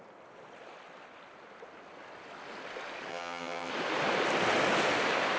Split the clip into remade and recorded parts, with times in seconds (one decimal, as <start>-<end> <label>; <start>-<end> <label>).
0.0-3.1 recorded; 3.1-3.7 remade; 3.7-5.4 recorded

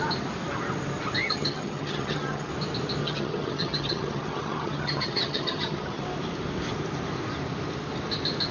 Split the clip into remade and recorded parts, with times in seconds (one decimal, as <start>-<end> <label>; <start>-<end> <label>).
0.0-1.2 recorded; 1.2-2.5 remade; 2.5-3.0 recorded; 3.0-6.0 remade; 6.0-8.5 recorded

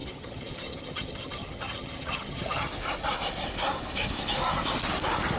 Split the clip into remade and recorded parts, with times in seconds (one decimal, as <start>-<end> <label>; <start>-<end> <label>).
0.0-2.7 remade; 2.7-5.4 recorded

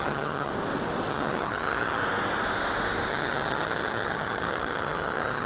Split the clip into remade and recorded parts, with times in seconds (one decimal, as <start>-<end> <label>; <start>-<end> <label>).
0.0-0.5 remade; 0.5-1.1 recorded; 1.1-2.0 remade; 2.0-3.1 recorded; 3.1-5.5 remade

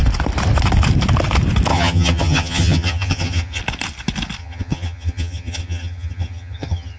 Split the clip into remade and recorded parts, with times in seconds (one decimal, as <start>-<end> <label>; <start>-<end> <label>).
0.0-1.7 recorded; 1.7-3.6 remade; 3.6-4.4 recorded; 4.4-7.0 remade

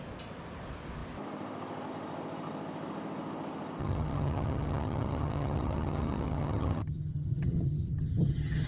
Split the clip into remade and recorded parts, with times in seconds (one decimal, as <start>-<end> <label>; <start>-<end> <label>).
0.0-3.8 recorded; 3.8-8.7 remade